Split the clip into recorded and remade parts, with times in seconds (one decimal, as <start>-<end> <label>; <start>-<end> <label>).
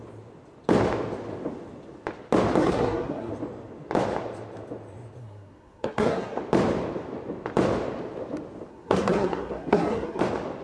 0.0-2.6 recorded; 2.6-3.3 remade; 3.3-5.2 recorded; 5.2-6.4 remade; 6.4-8.7 recorded; 8.7-10.2 remade; 10.2-10.6 recorded